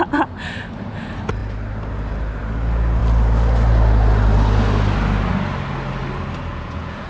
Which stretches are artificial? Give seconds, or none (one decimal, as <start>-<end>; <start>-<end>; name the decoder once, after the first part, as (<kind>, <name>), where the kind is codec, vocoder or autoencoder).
6.5-7.1 (vocoder, Vocos)

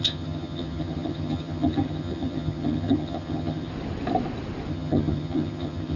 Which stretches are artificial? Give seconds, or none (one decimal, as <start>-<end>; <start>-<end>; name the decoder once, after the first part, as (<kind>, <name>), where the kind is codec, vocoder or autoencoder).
0.0-3.7 (vocoder, HiFi-GAN); 4.7-6.0

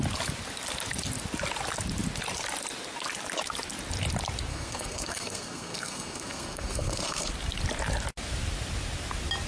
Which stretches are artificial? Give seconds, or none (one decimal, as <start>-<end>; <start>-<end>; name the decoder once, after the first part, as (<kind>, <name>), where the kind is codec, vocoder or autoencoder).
4.5-7.3 (codec, SNAC)

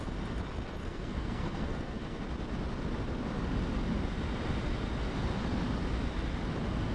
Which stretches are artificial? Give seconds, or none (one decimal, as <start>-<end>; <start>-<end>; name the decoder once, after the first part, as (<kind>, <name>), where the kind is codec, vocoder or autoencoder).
0.8-2.2 (codec, SNAC)